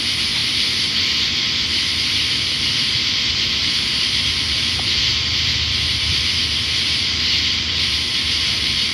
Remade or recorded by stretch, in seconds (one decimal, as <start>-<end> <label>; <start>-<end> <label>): 0.0-8.9 remade